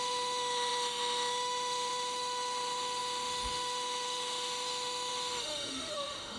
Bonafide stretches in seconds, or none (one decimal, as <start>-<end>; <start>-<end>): none